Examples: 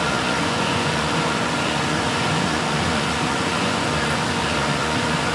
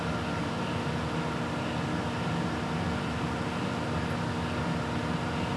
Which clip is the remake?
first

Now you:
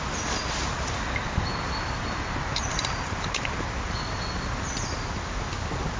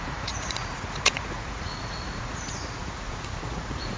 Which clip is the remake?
second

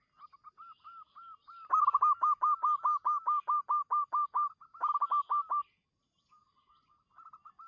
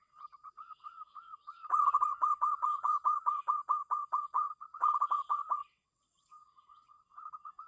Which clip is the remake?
second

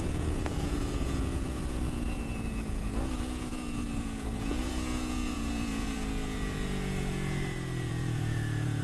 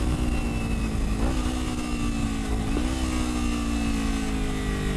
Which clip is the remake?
first